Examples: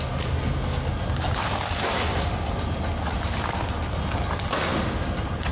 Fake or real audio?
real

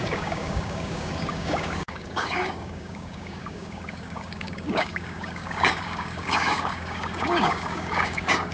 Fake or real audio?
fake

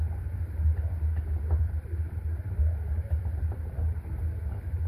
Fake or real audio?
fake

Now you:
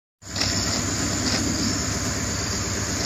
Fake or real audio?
real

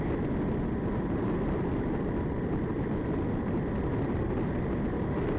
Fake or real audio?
real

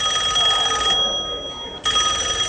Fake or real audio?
real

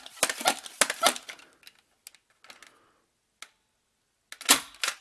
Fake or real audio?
real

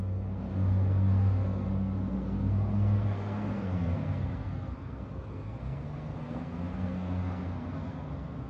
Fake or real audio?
fake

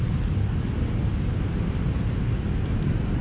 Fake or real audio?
real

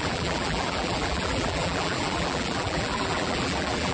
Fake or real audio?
fake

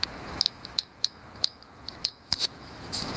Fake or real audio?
fake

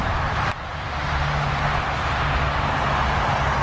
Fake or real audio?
real